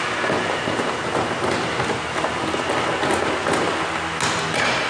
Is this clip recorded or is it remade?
recorded